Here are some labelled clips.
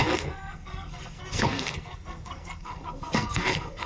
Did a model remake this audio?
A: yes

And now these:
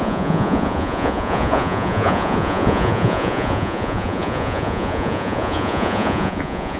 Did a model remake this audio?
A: yes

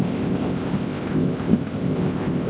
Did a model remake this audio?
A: yes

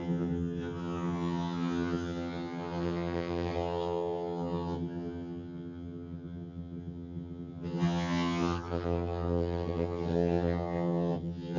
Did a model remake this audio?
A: yes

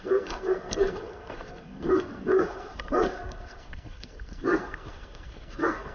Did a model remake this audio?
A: yes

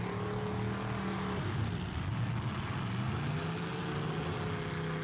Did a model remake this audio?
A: no